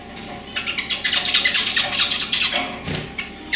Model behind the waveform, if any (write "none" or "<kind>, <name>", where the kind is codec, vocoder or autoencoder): none